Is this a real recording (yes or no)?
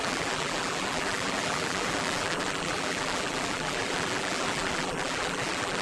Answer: no